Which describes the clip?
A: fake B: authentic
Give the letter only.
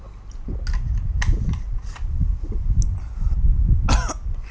B